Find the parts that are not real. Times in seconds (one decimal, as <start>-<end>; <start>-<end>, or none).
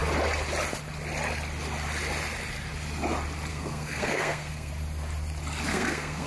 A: 3.5-4.7; 5.7-6.3